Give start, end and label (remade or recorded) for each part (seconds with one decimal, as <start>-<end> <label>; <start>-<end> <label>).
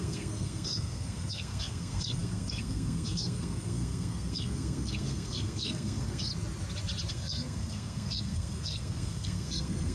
0.0-6.3 remade; 6.3-7.1 recorded; 7.1-9.9 remade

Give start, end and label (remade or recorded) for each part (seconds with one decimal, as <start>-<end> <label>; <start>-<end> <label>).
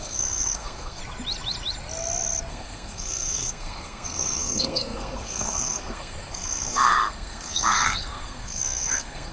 0.0-1.0 remade; 1.0-2.5 recorded; 2.5-9.3 remade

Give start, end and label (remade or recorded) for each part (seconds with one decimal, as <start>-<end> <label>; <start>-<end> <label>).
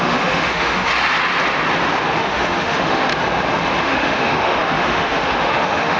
0.0-0.9 remade; 0.9-2.2 recorded; 2.2-3.1 remade; 3.1-3.8 recorded; 3.8-6.0 remade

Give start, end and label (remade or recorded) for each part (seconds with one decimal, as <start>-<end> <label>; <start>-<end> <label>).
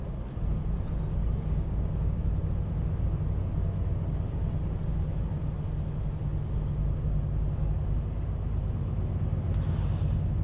0.0-1.2 recorded; 1.2-2.2 remade; 2.2-10.4 recorded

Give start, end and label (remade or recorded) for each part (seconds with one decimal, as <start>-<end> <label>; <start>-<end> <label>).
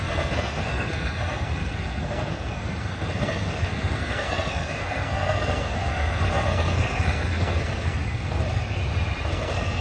0.0-8.8 remade; 8.8-9.3 recorded; 9.3-9.8 remade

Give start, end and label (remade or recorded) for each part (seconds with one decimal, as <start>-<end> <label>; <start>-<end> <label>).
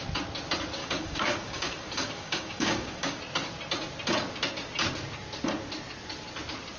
0.0-0.8 recorded; 0.8-3.2 remade; 3.2-6.8 recorded